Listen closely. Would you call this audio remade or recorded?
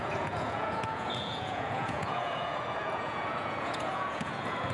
remade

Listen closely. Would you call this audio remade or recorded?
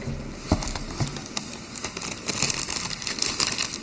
recorded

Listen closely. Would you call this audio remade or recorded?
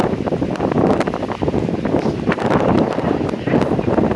recorded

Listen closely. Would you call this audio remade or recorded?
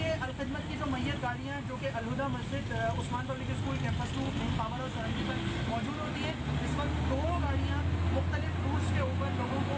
recorded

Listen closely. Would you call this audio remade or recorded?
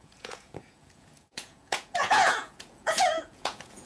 remade